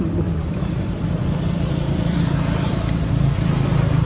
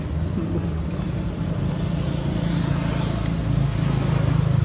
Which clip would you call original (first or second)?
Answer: second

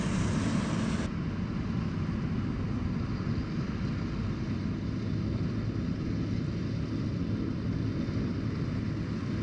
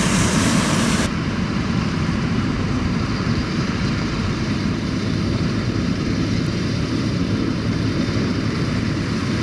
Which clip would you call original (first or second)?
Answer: first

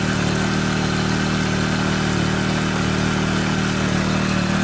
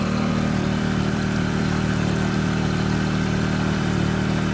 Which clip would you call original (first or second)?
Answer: first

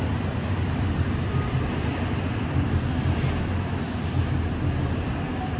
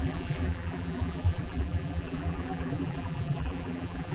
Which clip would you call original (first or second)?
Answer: first